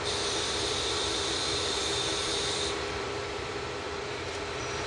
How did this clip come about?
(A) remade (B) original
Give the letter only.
A